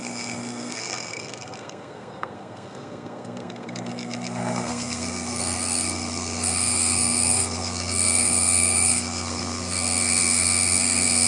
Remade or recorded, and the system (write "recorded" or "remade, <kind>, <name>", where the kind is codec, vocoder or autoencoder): remade, codec, SNAC